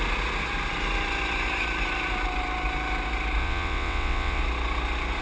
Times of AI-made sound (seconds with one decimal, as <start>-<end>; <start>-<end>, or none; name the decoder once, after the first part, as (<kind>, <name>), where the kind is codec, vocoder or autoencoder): 3.4-4.4 (vocoder, WaveNeXt)